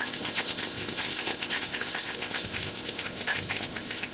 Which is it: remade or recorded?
remade